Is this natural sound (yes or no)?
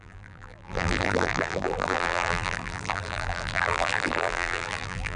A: no